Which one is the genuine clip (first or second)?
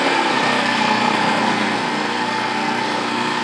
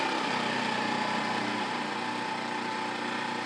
second